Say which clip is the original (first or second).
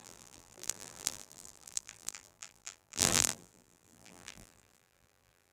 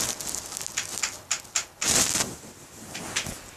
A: second